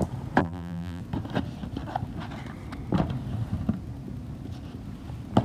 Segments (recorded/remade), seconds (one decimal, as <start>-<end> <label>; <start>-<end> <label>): 0.0-0.4 recorded; 0.4-1.0 remade; 1.0-5.4 recorded